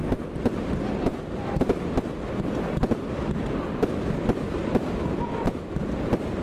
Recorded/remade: recorded